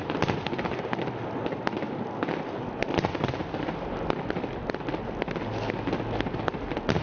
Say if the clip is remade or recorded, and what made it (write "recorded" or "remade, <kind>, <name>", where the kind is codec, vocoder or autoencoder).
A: recorded